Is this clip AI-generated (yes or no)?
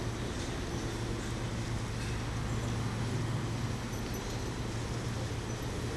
no